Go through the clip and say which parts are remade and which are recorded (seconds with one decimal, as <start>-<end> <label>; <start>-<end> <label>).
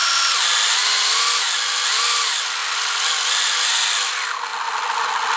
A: 0.0-5.4 recorded